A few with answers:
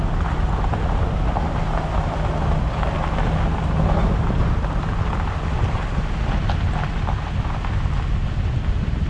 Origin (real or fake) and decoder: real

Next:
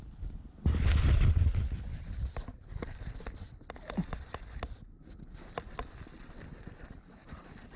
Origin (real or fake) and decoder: real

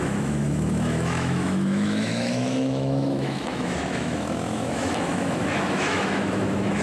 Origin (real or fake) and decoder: fake, autoencoder, DAC-VAE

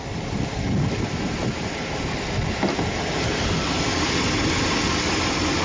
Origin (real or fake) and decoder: real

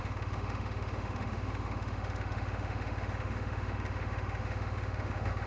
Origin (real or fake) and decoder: fake, autoencoder, DAC-VAE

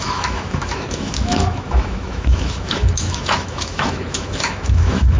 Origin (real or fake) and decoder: fake, autoencoder, DAC-VAE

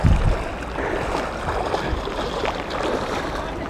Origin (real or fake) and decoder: real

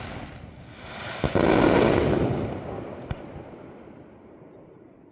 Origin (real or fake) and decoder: real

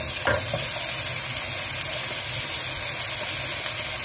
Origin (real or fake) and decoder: real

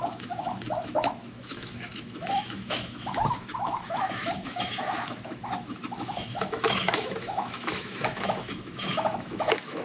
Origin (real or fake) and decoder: fake, autoencoder, DAC-VAE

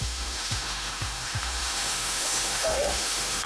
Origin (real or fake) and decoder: fake, autoencoder, DAC-VAE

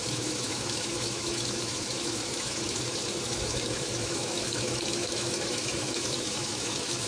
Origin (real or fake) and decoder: fake, autoencoder, DAC-VAE